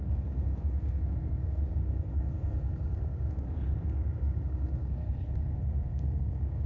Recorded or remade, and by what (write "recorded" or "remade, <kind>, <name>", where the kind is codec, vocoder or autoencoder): remade, codec, SNAC